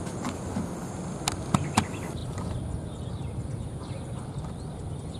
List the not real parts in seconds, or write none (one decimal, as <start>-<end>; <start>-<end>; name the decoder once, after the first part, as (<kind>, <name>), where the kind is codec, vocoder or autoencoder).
none